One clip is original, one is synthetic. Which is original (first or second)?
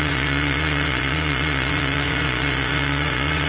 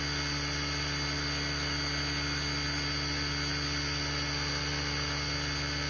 second